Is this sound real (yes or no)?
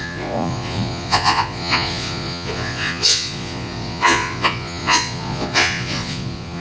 no